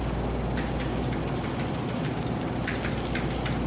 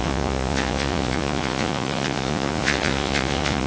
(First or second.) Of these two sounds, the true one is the first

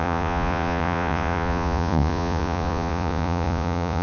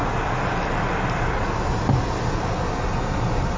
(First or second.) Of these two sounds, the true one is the second